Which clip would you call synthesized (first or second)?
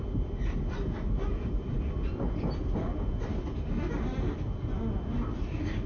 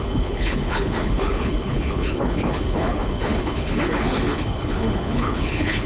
second